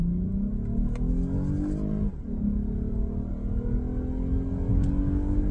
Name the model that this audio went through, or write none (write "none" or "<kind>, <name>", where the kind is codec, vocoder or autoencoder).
none